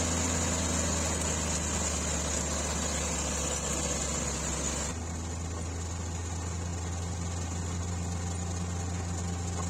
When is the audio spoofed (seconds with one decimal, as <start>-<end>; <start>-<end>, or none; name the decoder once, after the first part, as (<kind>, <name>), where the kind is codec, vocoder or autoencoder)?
none